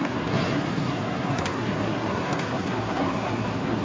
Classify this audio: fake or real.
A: fake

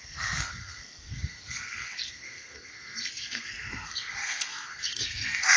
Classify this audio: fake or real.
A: fake